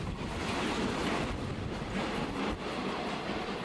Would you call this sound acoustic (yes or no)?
yes